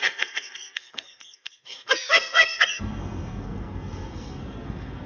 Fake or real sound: fake